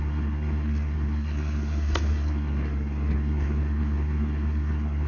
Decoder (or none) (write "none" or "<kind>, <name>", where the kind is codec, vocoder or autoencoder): codec, SNAC